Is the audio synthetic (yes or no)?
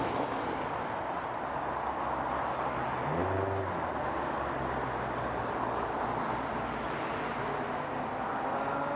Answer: no